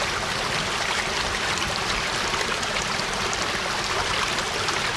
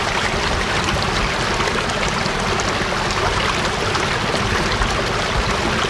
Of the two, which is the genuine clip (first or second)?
second